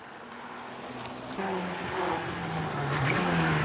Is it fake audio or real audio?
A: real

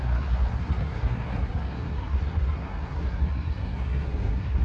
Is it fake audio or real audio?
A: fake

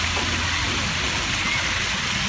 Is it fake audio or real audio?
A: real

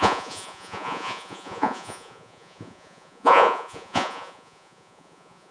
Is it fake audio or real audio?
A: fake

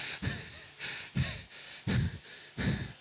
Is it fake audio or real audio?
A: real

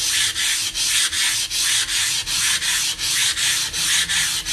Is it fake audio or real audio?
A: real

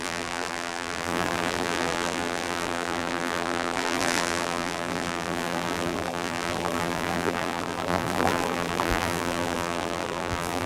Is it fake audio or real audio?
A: fake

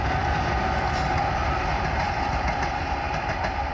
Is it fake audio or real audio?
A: fake